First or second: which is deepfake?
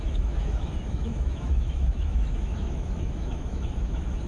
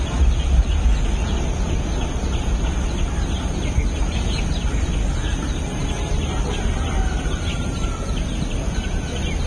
first